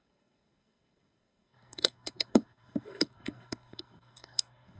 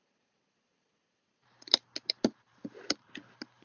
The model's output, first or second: first